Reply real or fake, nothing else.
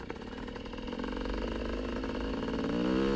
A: real